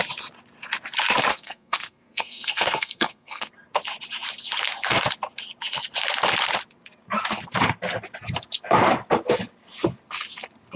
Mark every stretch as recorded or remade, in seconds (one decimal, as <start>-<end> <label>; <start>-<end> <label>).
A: 0.0-1.3 recorded; 1.3-3.5 remade; 3.5-10.8 recorded